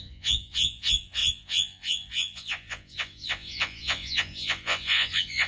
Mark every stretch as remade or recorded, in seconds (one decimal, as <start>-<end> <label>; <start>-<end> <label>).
0.0-5.5 remade